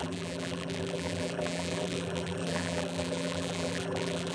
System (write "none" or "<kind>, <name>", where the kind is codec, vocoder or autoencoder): vocoder, BigVGAN v2